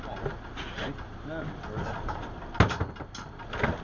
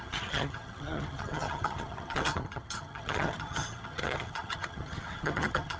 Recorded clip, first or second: first